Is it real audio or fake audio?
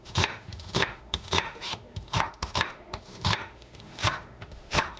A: fake